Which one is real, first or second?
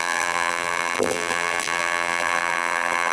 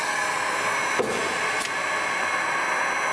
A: second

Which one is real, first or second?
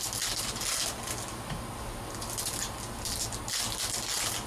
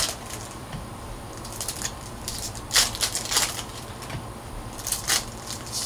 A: first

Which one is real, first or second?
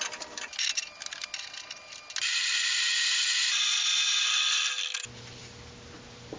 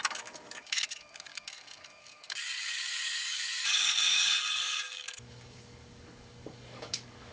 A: first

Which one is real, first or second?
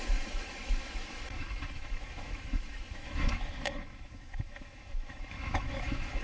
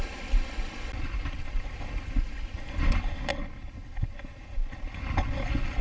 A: second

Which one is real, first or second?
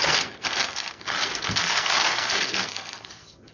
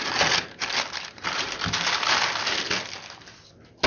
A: second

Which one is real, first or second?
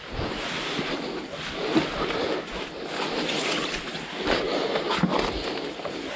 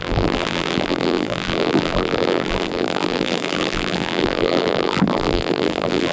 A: first